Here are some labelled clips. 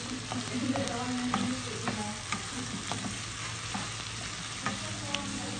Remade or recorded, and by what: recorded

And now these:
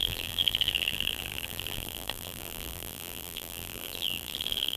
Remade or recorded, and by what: remade, vocoder, BigVGAN v2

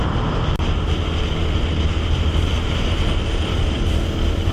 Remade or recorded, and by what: recorded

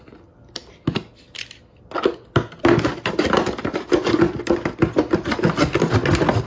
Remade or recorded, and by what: recorded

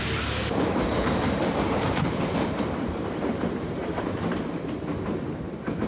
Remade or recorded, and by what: remade, vocoder, BigVGAN v2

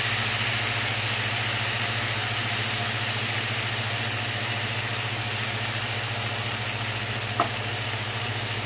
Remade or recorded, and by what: recorded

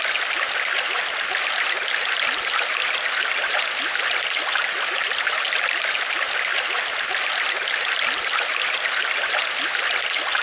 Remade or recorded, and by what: recorded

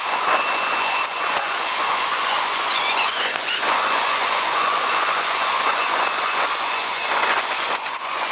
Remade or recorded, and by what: remade, vocoder, Vocos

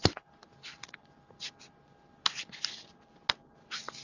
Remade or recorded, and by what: recorded